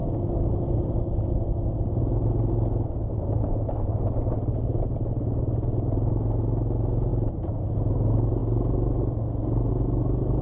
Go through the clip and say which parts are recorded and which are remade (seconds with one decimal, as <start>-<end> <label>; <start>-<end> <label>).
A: 0.0-10.4 recorded